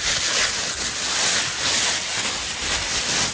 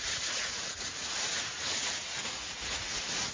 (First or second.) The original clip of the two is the first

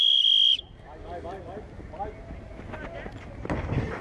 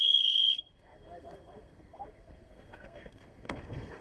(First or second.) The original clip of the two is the first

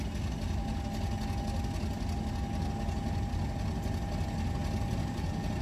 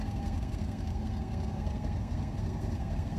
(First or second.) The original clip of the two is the first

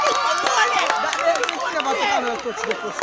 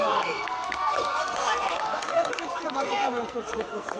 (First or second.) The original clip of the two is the first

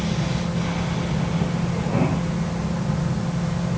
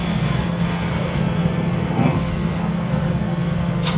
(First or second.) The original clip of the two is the first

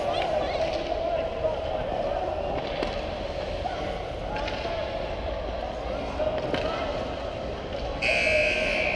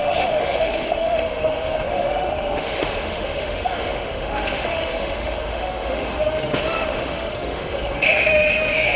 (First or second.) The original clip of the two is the first